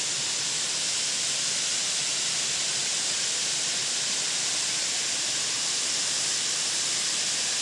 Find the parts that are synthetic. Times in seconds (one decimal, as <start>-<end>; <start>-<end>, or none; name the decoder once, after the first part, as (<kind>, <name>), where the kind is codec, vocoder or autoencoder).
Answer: none